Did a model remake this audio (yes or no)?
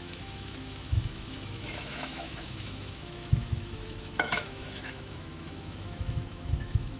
yes